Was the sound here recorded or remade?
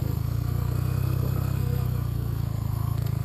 remade